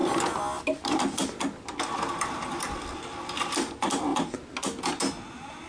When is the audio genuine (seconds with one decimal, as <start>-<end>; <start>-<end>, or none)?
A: 0.0-5.7